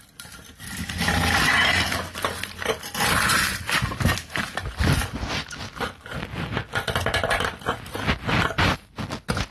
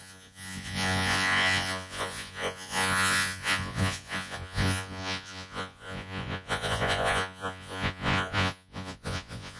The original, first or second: first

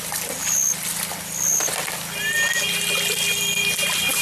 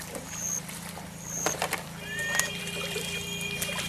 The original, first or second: first